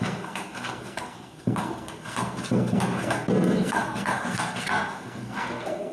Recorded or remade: remade